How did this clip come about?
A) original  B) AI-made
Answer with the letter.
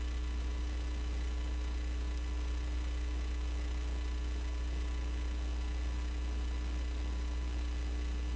A